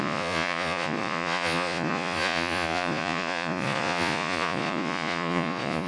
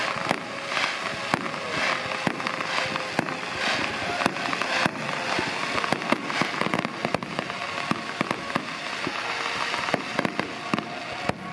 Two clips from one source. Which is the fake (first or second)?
first